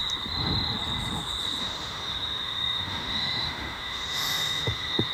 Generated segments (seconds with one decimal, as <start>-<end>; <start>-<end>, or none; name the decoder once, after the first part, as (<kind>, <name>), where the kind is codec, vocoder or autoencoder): 1.6-5.1 (autoencoder, DAC-VAE)